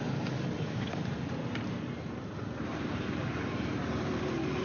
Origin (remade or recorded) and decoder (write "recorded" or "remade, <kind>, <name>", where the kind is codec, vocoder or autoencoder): recorded